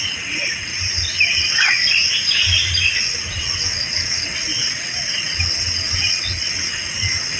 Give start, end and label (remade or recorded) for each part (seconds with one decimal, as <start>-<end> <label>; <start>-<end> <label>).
0.0-0.7 remade; 0.7-1.3 recorded; 1.3-1.8 remade; 1.8-2.9 recorded; 2.9-7.4 remade